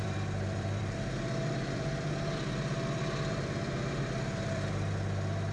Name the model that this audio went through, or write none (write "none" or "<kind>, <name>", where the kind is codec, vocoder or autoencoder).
vocoder, BigVGAN v2